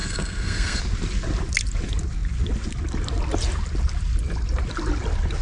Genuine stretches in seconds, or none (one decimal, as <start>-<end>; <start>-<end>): 0.8-5.4